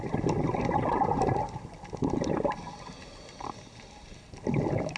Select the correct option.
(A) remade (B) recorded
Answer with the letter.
B